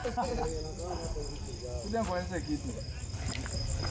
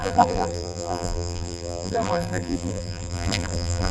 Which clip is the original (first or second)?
first